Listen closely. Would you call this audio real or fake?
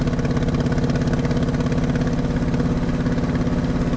real